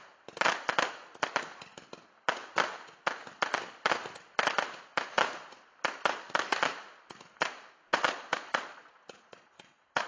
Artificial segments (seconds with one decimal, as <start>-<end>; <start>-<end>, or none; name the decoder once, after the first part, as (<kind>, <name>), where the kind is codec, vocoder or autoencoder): 7.9-10.1 (vocoder, Vocos)